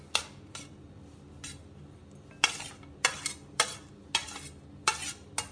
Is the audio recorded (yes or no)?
yes